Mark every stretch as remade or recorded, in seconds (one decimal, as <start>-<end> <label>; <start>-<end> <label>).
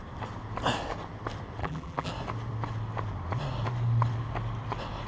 0.0-1.6 recorded; 1.6-2.1 remade; 2.1-5.1 recorded